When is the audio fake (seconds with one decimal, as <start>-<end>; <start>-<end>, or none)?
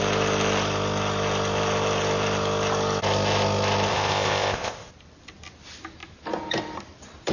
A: 3.9-4.9